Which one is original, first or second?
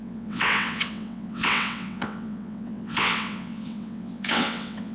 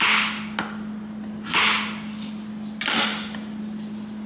second